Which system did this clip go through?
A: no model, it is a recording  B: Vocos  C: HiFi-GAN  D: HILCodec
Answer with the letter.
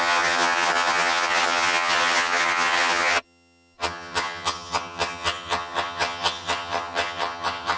C